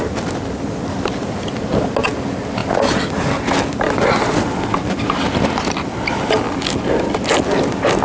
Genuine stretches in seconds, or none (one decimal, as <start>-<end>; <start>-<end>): 0.0-8.0